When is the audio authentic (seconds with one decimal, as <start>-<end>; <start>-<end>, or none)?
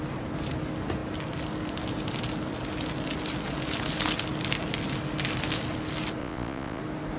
0.0-6.2; 6.8-7.2